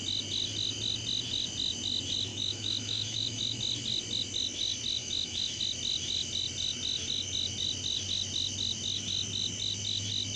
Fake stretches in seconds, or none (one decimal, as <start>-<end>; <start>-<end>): 2.3-3.6; 5.0-5.6